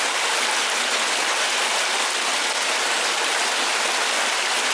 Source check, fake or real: real